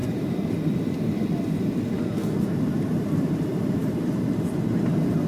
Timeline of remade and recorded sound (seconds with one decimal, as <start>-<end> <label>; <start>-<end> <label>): 0.0-1.1 remade; 1.1-2.7 recorded; 2.7-5.3 remade